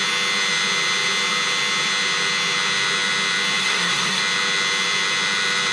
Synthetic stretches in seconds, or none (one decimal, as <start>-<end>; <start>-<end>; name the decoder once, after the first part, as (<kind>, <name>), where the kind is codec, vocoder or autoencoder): 3.6-4.2 (codec, SNAC)